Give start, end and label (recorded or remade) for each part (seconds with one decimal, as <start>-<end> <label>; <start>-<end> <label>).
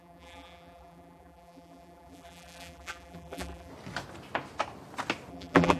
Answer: 0.0-3.7 remade; 3.7-5.3 recorded; 5.3-5.8 remade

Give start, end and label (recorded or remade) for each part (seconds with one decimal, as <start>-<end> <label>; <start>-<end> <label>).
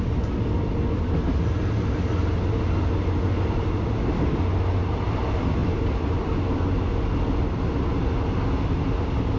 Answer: 0.0-5.6 recorded; 5.6-6.2 remade; 6.2-9.4 recorded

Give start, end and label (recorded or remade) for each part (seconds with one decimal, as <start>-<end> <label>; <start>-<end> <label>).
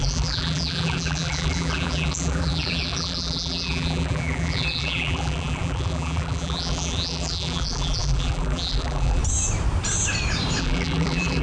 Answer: 0.0-9.2 remade; 9.2-10.6 recorded; 10.6-11.4 remade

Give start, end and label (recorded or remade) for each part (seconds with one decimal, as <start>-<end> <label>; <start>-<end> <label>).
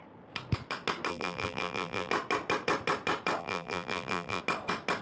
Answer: 0.0-1.1 recorded; 1.1-2.1 remade; 2.1-3.4 recorded; 3.4-4.4 remade; 4.4-5.0 recorded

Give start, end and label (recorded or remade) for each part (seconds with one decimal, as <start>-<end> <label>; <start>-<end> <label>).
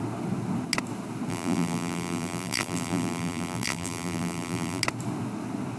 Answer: 0.0-1.3 recorded; 1.3-4.8 remade; 4.8-5.8 recorded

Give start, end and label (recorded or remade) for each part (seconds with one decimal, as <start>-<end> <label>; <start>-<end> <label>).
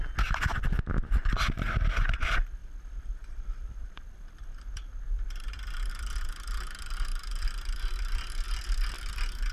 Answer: 0.0-2.6 recorded; 2.6-5.9 remade; 5.9-9.5 recorded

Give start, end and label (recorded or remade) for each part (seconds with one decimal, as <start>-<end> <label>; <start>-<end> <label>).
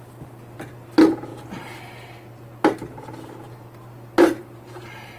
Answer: 0.0-5.2 recorded